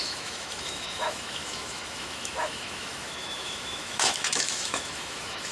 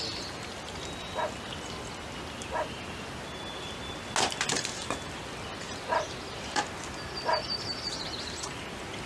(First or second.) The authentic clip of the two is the second